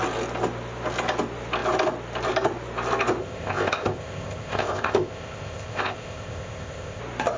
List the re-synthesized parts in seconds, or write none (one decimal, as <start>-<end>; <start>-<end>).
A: 3.2-7.0